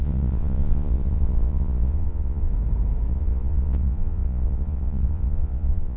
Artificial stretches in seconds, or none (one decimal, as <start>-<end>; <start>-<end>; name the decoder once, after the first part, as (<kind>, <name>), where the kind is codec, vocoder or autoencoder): 0.0-2.5 (vocoder, Vocos); 3.1-6.0